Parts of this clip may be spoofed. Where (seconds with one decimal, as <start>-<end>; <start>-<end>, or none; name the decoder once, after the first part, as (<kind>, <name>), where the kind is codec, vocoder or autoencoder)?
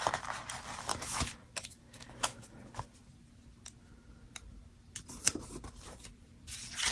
0.9-2.6 (autoencoder, DAC-VAE)